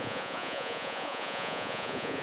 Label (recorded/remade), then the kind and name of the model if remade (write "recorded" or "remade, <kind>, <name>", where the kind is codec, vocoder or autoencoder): remade, vocoder, Vocos